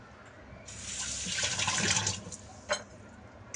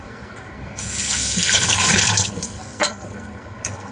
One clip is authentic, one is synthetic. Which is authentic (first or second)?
first